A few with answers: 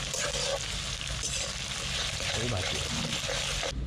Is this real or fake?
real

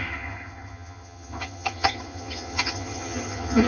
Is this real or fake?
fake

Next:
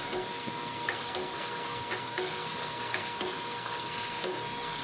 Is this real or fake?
fake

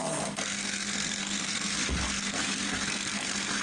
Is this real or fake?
fake